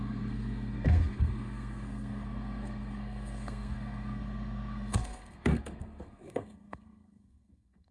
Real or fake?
fake